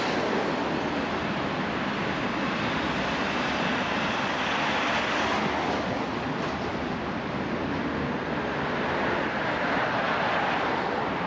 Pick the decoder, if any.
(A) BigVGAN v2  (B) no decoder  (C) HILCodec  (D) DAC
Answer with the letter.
B